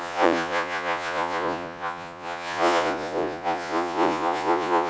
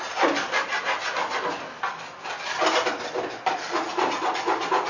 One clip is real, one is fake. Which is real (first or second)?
second